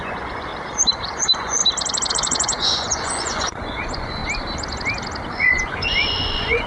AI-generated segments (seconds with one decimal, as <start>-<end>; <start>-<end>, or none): 0.0-0.5; 1.2-1.6; 2.1-4.2; 5.3-6.7